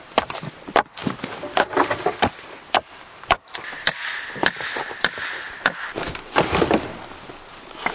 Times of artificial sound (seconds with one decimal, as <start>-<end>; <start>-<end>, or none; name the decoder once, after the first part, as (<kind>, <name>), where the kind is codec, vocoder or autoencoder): none